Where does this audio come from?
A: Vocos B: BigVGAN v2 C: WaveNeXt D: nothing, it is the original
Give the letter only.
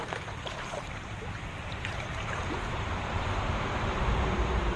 B